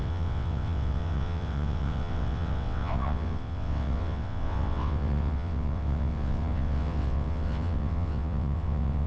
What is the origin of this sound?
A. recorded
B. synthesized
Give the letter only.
B